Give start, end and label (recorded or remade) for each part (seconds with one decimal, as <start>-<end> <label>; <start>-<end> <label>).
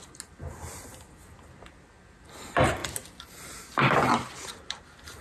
0.0-5.2 recorded